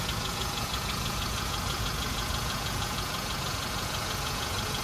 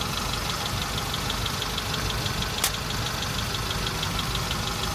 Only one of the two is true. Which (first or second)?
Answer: second